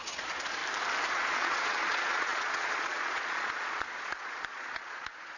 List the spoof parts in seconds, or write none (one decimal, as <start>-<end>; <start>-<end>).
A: 0.0-0.6; 1.1-5.4